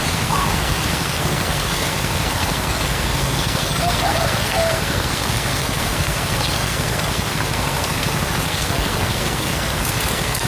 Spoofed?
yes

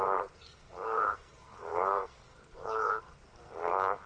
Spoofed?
yes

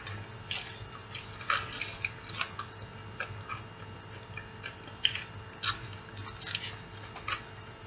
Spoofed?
no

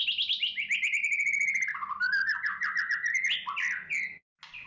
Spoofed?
no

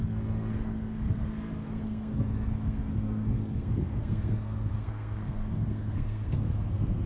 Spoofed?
yes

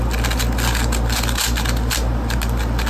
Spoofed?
no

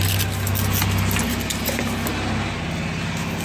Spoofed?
no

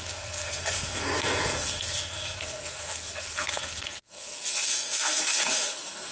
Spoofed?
yes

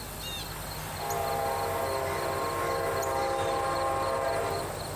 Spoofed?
no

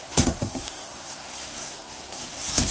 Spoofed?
yes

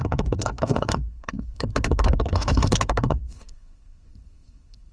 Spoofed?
yes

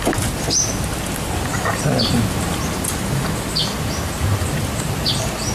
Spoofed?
no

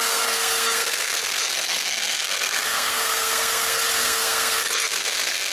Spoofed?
yes